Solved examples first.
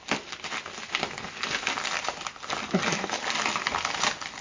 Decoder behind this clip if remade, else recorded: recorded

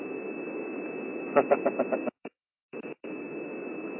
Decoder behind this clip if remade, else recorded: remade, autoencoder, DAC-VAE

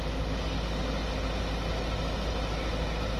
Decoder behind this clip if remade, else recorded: recorded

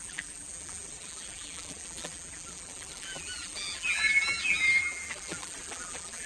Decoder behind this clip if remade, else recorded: remade, vocoder, BigVGAN v2